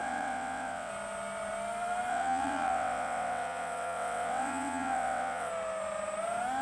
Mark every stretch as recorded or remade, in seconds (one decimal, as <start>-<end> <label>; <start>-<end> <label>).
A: 0.0-0.9 remade; 0.9-2.1 recorded; 2.1-5.5 remade; 5.5-6.6 recorded